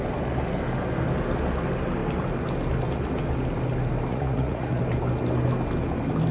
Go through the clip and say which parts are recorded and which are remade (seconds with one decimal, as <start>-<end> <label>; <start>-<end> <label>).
0.0-4.1 recorded; 4.1-4.8 remade; 4.8-6.3 recorded